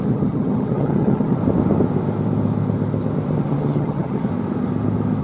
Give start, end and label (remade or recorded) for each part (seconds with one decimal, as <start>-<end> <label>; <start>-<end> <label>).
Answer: 0.0-1.4 remade; 1.4-3.4 recorded; 3.4-4.3 remade; 4.3-5.2 recorded